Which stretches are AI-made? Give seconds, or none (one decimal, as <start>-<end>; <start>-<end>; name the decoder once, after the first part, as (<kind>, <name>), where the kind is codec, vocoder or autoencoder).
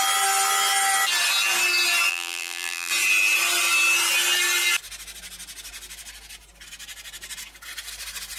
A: 2.1-2.9 (vocoder, BigVGAN v2)